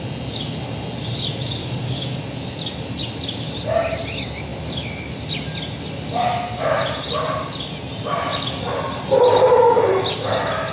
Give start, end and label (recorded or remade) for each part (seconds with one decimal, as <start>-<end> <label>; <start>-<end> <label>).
0.0-1.6 recorded; 1.6-2.2 remade; 2.2-10.7 recorded